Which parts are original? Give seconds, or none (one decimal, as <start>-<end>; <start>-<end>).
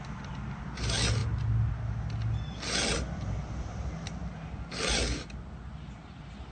0.0-6.5